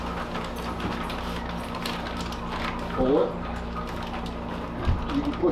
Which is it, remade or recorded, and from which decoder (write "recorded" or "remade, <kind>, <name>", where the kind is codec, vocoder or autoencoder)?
recorded